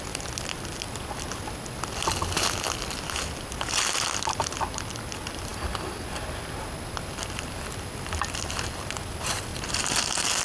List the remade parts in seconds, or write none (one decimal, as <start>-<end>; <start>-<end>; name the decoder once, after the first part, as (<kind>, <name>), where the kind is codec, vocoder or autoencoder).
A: none